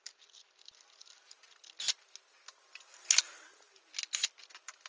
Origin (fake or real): real